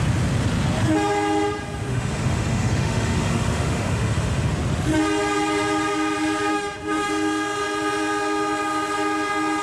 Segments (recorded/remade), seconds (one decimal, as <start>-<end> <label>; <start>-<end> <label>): 0.0-1.9 recorded; 1.9-4.5 remade; 4.5-6.5 recorded; 6.5-7.1 remade; 7.1-9.6 recorded